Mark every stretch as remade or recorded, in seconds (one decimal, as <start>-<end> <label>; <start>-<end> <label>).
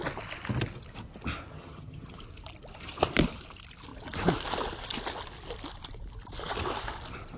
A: 0.0-1.5 recorded; 1.5-2.2 remade; 2.2-7.4 recorded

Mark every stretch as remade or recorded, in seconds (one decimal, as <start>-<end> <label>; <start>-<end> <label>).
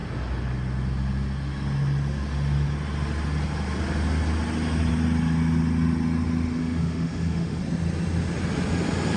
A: 0.0-6.6 recorded; 6.6-7.6 remade; 7.6-9.2 recorded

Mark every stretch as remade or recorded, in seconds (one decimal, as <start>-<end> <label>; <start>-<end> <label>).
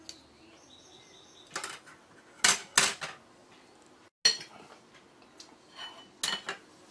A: 0.0-6.9 recorded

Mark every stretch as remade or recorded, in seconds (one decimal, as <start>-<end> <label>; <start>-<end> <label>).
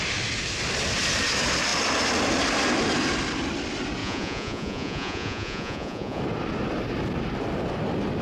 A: 0.0-4.0 recorded; 4.0-6.2 remade; 6.2-8.2 recorded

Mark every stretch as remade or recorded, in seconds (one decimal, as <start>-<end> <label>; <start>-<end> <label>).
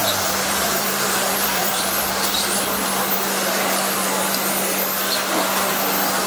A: 0.0-2.1 remade; 2.1-6.3 recorded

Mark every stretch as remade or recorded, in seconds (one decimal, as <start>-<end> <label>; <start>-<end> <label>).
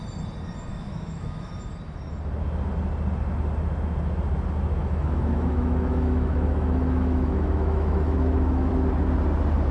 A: 0.0-0.7 recorded; 0.7-1.5 remade; 1.5-4.8 recorded; 4.8-8.7 remade; 8.7-9.7 recorded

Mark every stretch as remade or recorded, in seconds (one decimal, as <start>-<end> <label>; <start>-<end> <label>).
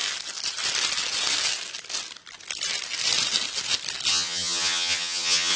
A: 0.0-4.1 recorded; 4.1-5.6 remade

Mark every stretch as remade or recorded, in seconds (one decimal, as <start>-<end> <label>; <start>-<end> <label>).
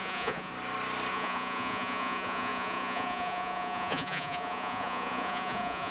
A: 0.0-0.5 remade; 0.5-1.1 recorded; 1.1-5.9 remade